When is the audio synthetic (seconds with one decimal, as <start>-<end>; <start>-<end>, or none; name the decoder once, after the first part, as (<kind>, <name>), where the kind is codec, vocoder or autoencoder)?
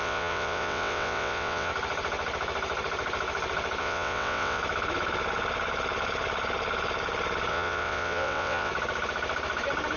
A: 0.0-1.7 (vocoder, WaveNeXt); 3.8-4.6; 7.5-8.7